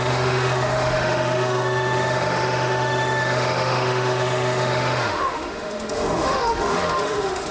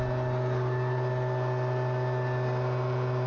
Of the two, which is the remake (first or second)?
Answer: first